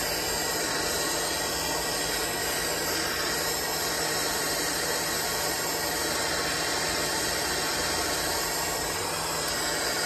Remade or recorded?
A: recorded